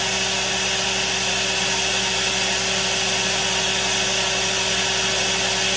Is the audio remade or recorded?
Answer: recorded